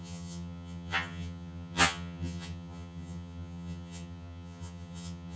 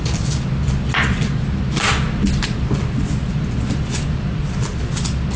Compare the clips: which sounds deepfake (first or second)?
first